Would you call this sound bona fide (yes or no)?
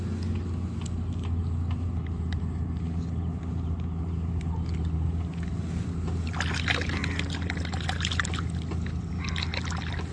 yes